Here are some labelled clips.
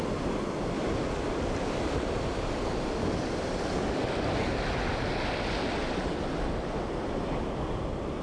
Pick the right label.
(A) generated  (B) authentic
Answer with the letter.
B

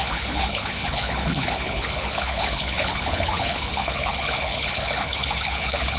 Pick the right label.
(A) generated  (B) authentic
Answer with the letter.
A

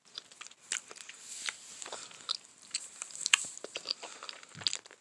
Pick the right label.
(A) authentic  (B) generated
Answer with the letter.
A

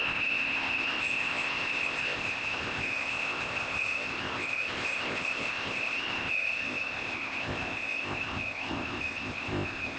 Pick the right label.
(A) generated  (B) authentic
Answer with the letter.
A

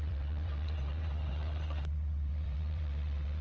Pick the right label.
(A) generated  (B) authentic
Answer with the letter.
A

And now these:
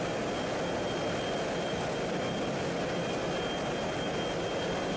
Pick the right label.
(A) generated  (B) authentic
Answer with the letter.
B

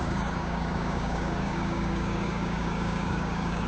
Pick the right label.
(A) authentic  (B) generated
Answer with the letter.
B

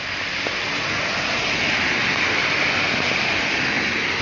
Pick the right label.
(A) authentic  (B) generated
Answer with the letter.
A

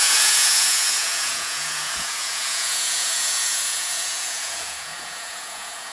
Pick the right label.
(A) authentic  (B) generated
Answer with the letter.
B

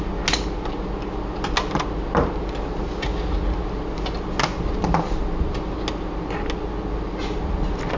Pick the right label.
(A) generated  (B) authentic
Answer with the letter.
B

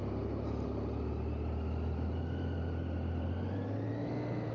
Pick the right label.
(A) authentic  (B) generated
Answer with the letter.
A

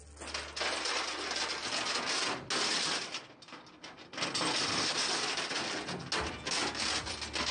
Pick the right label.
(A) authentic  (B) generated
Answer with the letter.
A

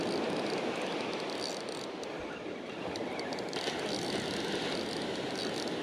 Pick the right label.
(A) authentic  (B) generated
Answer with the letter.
A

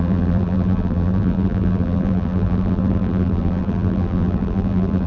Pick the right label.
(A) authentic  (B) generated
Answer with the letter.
B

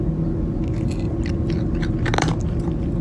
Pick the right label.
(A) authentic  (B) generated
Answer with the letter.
A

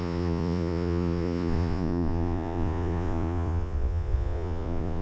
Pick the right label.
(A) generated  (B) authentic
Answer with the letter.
A